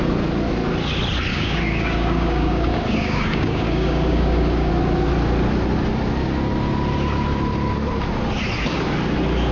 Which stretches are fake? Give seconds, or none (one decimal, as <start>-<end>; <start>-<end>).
1.3-4.7